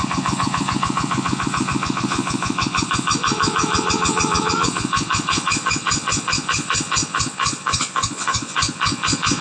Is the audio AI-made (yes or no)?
yes